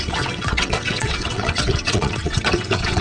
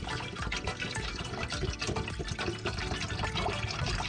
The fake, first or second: first